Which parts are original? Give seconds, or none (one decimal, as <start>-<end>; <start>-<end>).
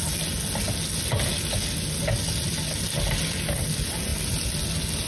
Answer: 0.0-5.1